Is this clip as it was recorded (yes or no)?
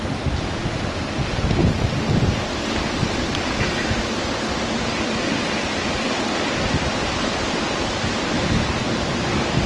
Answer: yes